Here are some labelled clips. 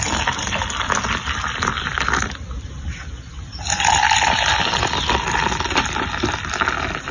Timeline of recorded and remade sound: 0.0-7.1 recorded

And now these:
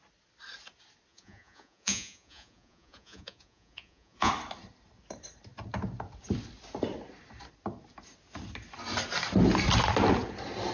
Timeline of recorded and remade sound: 0.0-1.1 recorded; 1.1-4.3 remade; 4.3-10.7 recorded

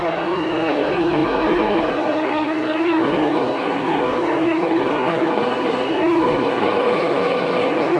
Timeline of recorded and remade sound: 0.0-8.0 remade

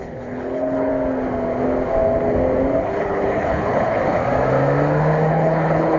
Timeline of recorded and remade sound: 0.0-0.9 remade; 0.9-2.8 recorded; 2.8-4.2 remade; 4.2-5.3 recorded; 5.3-6.0 remade

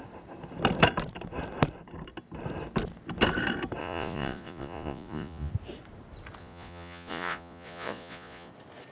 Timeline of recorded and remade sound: 0.0-3.8 recorded; 3.8-5.5 remade; 5.5-6.4 recorded; 6.4-8.5 remade; 8.5-8.9 recorded

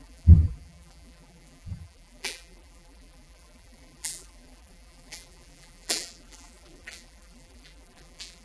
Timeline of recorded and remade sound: 0.0-8.4 remade

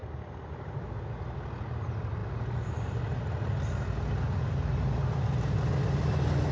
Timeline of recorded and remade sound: 0.0-6.5 recorded